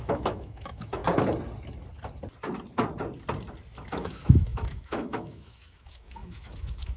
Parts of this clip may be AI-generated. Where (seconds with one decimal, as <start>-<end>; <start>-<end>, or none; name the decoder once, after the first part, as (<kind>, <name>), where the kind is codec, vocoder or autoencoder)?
0.0-1.0 (autoencoder, DAC-VAE); 3.9-7.0